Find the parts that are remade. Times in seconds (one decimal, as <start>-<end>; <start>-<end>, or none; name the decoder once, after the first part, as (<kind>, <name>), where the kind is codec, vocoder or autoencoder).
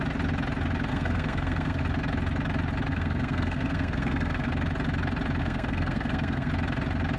0.9-1.8 (codec, SNAC); 2.9-4.5; 5.4-6.5